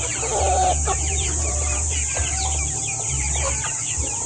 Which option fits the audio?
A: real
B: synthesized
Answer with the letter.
B